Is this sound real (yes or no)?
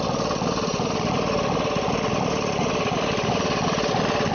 yes